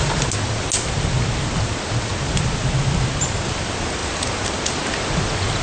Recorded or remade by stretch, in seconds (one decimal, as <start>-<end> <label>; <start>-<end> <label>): 0.0-5.6 recorded